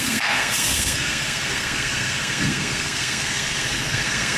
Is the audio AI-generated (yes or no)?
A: yes